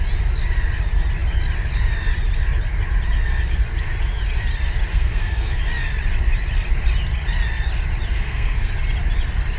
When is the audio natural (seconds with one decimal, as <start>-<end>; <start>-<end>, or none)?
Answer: 0.0-4.9; 5.6-8.1; 8.7-9.6